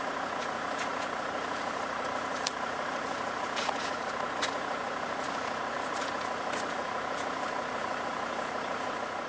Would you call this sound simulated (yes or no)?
yes